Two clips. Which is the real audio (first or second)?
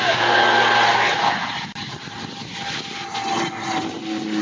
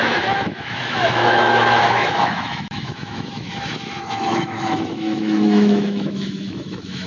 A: first